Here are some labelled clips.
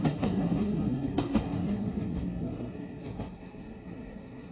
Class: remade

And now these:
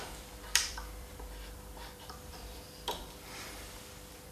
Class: remade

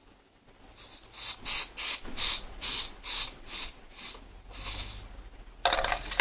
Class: recorded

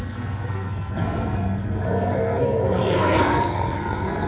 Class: remade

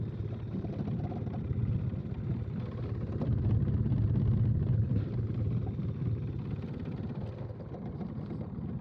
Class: recorded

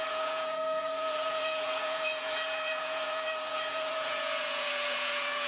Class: remade